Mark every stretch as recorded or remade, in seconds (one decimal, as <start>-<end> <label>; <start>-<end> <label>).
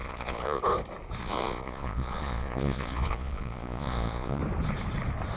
0.0-0.6 remade; 0.6-1.2 recorded; 1.2-4.4 remade; 4.4-5.4 recorded